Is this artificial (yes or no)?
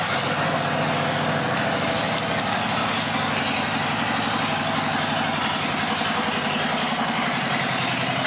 no